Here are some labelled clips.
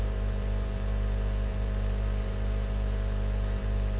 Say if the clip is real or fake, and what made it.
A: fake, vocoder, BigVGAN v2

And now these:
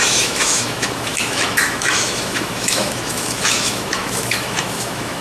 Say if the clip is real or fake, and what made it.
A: fake, autoencoder, DAC-VAE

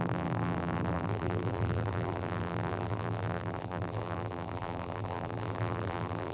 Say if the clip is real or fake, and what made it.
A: fake, vocoder, BigVGAN v2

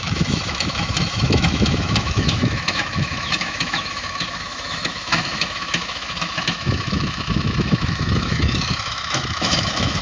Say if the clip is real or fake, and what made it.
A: fake, autoencoder, DAC-VAE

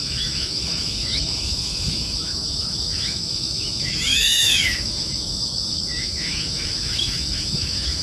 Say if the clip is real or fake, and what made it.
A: fake, autoencoder, DAC-VAE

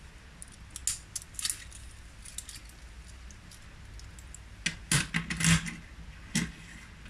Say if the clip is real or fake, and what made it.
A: real